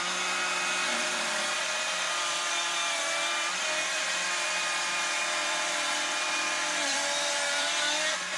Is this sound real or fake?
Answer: fake